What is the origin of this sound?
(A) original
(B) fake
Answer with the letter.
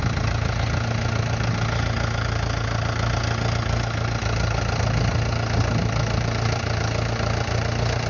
A